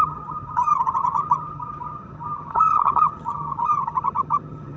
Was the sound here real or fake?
fake